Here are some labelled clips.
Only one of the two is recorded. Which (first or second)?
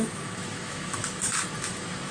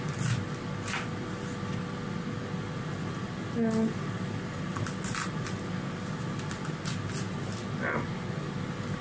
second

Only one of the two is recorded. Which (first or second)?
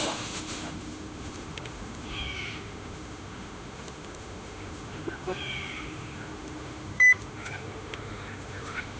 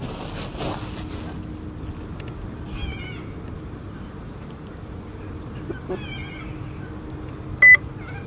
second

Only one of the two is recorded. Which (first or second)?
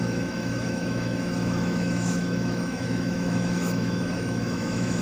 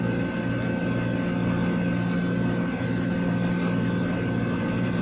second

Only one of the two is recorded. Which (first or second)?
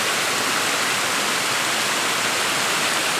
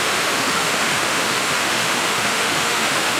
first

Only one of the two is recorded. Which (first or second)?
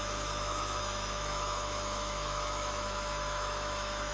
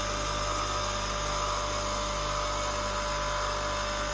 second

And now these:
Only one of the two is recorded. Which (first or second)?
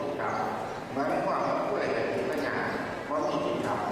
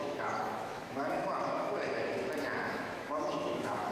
first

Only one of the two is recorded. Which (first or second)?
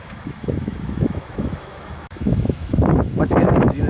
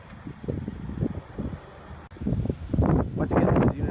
second